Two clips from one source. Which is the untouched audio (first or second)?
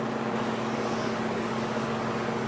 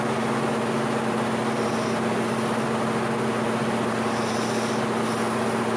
second